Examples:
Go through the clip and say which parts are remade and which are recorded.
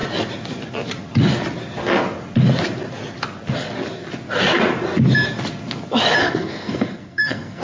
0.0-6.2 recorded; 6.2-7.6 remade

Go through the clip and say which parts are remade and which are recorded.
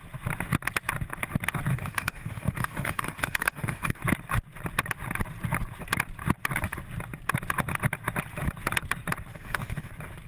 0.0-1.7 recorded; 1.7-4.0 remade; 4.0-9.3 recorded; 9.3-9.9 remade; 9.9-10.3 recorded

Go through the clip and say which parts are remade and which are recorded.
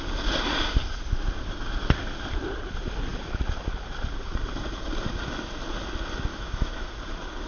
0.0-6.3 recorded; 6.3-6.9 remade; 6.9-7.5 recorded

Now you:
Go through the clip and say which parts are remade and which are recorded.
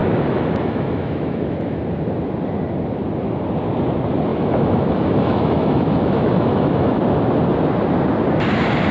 0.0-1.8 remade; 1.8-4.3 recorded; 4.3-7.0 remade; 7.0-8.9 recorded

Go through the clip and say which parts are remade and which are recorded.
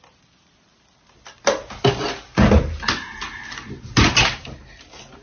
0.0-5.2 recorded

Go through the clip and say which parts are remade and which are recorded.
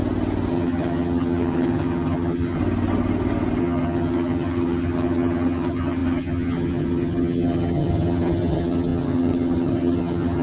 0.0-0.5 recorded; 0.5-2.6 remade; 2.6-3.6 recorded; 3.6-10.4 remade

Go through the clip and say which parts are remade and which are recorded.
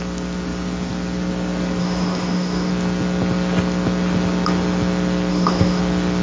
0.0-1.8 recorded; 1.8-2.7 remade; 2.7-5.3 recorded; 5.3-5.8 remade; 5.8-6.2 recorded